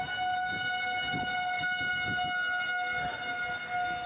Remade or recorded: recorded